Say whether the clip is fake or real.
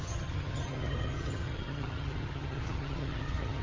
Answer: fake